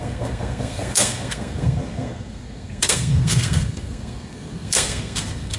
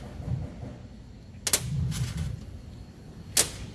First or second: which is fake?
first